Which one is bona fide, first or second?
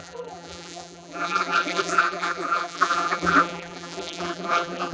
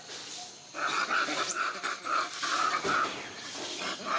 second